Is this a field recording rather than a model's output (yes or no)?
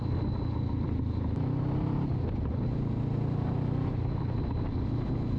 yes